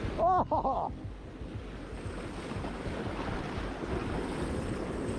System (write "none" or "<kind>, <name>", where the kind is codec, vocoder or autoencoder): none